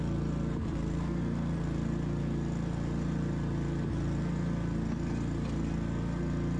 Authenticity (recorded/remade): recorded